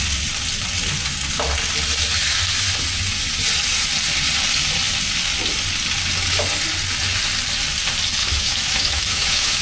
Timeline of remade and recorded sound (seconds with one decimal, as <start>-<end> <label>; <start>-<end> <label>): 0.0-8.2 recorded; 8.2-9.6 remade